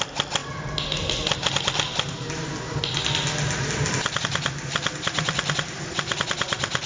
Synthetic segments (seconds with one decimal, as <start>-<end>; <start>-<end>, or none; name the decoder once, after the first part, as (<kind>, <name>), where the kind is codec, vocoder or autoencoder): none